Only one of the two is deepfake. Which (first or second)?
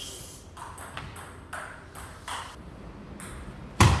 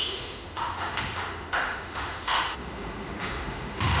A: second